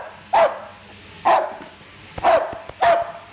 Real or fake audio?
real